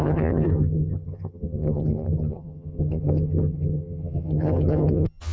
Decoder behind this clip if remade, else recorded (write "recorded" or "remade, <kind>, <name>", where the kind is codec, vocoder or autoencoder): remade, vocoder, HiFi-GAN